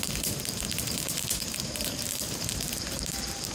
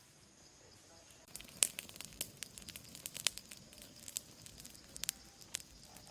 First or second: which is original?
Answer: second